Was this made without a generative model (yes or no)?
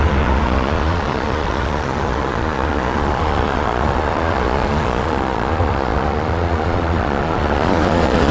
no